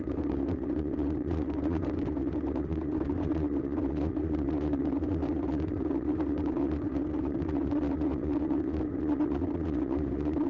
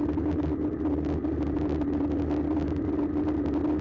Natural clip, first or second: second